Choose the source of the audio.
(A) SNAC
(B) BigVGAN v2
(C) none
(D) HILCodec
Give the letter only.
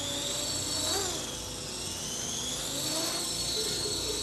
C